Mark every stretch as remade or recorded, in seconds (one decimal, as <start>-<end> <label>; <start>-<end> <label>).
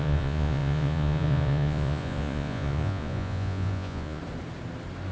0.0-4.2 remade; 4.2-5.1 recorded